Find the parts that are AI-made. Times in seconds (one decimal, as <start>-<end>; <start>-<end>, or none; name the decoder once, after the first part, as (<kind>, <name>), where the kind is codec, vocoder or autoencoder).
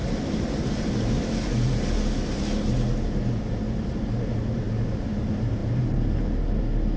none